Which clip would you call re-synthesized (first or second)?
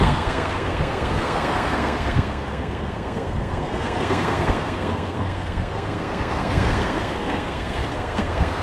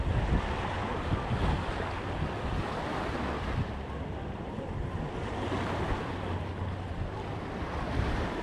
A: first